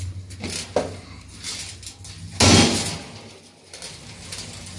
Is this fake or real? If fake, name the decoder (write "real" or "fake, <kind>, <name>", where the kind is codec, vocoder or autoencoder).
real